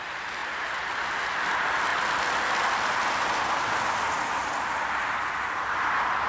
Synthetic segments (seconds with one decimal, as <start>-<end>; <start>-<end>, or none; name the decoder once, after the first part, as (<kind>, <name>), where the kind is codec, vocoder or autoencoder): none